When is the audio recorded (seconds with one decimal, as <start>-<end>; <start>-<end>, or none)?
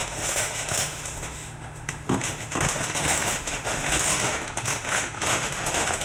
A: none